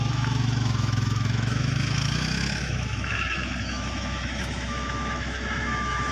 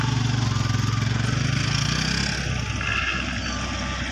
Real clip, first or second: second